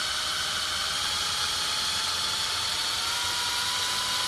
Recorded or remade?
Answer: recorded